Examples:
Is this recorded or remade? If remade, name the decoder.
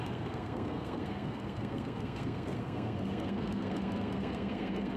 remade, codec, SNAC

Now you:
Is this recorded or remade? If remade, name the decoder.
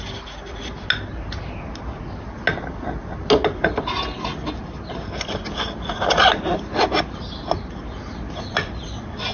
recorded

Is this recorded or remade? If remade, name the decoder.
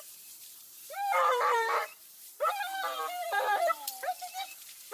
remade, vocoder, BigVGAN v2